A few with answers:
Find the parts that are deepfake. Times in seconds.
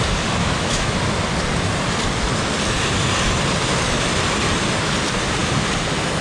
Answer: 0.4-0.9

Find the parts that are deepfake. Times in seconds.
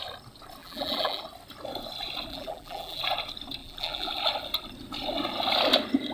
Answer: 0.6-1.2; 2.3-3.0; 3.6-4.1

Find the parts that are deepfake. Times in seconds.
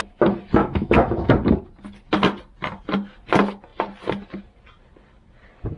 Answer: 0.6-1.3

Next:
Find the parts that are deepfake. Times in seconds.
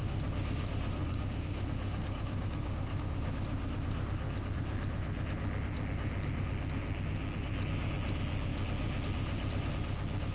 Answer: 1.0-3.0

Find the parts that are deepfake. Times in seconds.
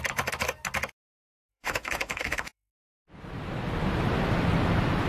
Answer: 1.5-2.7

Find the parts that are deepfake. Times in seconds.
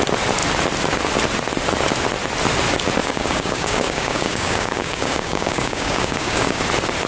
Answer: 3.0-6.6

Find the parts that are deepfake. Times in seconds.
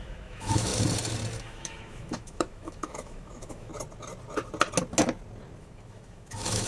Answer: 0.0-0.7; 1.4-3.7; 5.6-6.7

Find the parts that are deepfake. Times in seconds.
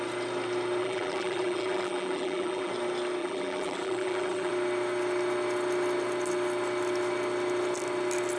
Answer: 0.8-2.7; 3.2-4.5